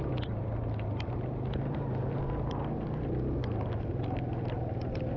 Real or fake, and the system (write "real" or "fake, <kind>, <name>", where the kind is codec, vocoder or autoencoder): real